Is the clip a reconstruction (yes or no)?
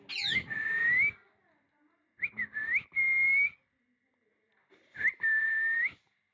no